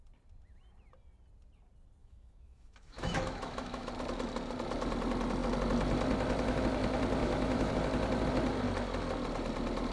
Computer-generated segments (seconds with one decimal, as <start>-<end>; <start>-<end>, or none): 2.0-3.9; 7.2-7.7